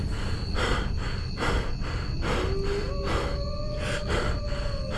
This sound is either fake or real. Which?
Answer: real